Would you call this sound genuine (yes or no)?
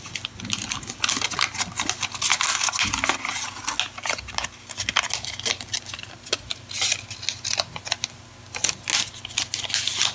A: yes